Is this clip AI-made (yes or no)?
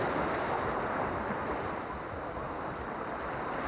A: no